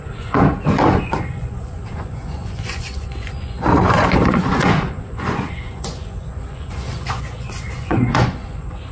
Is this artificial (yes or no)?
yes